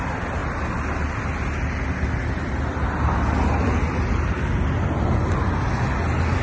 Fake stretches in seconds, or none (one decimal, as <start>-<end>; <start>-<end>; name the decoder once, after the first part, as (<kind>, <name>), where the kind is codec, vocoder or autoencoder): none